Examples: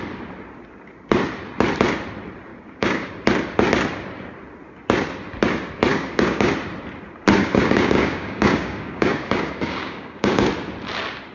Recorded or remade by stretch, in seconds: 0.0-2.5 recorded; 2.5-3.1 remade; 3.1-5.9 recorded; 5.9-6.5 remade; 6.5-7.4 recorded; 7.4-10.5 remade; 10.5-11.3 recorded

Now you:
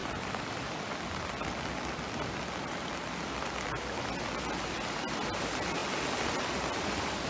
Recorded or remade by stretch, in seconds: 0.0-7.3 recorded

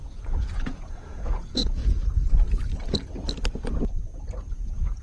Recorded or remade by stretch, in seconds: 0.0-1.8 remade; 1.8-4.5 recorded; 4.5-5.0 remade

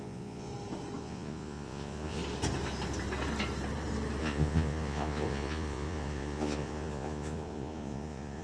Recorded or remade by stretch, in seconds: 0.0-0.5 remade; 0.5-1.0 recorded; 1.0-2.2 remade; 2.2-4.2 recorded; 4.2-8.4 remade

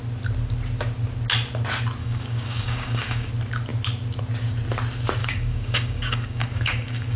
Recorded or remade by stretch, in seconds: 0.0-2.0 recorded; 2.0-3.3 remade; 3.3-5.2 recorded; 5.2-7.2 remade

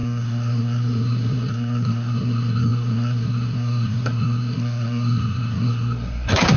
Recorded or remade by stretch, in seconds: 0.0-6.6 remade

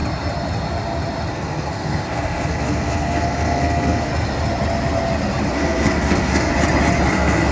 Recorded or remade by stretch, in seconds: 0.0-1.3 recorded; 1.3-4.1 remade; 4.1-5.5 recorded; 5.5-6.5 remade; 6.5-7.1 recorded; 7.1-7.5 remade